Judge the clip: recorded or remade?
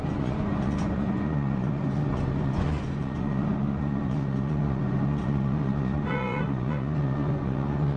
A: remade